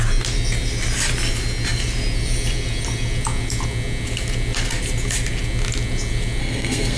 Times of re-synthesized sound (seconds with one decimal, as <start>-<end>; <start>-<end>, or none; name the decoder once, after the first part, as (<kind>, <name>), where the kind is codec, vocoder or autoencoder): 6.4-7.0 (codec, SNAC)